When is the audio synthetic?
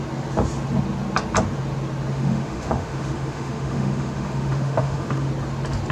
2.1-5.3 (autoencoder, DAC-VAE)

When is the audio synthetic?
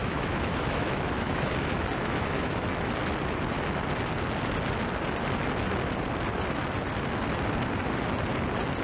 0.0-1.5 (autoencoder, DAC-VAE); 2.0-2.9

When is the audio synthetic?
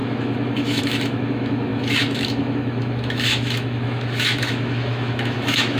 0.0-5.8 (autoencoder, DAC-VAE)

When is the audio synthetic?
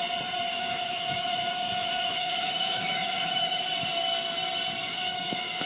0.5-3.6 (autoencoder, DAC-VAE); 4.8-5.7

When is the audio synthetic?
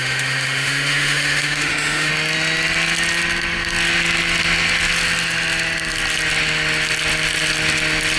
0.0-2.1 (autoencoder, DAC-VAE)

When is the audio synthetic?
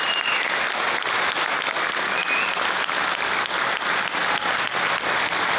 none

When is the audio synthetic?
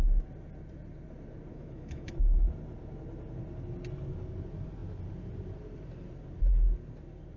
1.5-2.1 (autoencoder, DAC-VAE)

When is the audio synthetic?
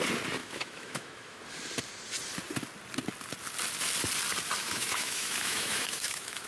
0.4-1.4 (autoencoder, DAC-VAE); 4.6-6.5